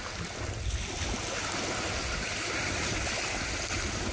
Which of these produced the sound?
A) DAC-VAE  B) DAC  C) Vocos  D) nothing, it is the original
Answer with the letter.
D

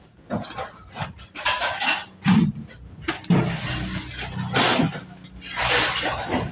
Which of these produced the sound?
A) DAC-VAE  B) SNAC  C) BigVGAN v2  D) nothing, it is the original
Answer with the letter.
D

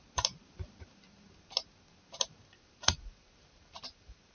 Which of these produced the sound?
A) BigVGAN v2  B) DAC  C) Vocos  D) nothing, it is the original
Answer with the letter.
A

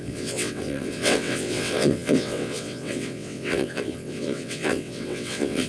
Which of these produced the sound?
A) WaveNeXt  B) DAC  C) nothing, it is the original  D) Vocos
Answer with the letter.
A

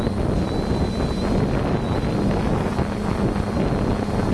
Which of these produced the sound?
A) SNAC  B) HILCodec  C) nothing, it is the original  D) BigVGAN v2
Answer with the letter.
C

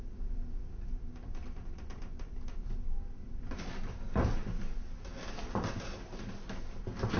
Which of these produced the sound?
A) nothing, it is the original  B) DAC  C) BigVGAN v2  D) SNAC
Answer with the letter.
A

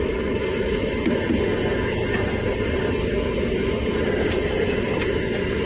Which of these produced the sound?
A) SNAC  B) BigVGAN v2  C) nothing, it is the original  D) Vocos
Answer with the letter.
C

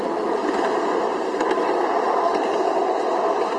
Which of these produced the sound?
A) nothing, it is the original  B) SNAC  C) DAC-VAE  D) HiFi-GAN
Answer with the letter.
A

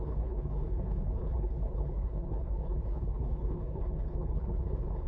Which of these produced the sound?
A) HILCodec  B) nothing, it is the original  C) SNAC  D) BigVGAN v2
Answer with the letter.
A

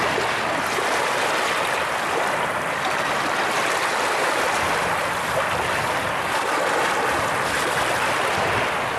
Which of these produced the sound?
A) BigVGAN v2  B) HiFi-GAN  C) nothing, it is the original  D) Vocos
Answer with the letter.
C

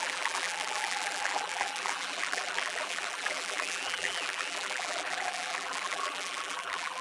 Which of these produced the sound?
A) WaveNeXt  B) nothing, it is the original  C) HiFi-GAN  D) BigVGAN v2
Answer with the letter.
D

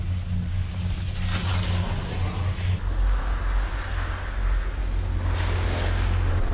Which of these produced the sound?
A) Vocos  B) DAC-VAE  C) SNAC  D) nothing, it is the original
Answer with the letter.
D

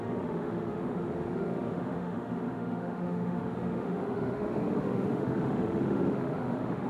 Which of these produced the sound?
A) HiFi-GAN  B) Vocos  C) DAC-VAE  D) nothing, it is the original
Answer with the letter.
C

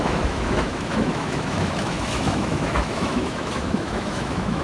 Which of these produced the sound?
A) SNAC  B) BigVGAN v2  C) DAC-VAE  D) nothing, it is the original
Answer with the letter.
C